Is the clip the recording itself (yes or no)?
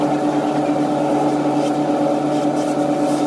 yes